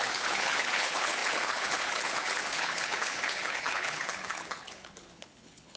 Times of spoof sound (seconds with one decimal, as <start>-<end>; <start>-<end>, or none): 0.0-5.8